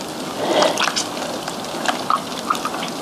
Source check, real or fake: real